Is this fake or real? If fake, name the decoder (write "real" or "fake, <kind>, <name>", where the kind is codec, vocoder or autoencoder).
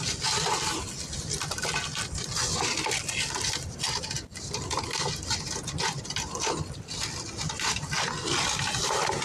real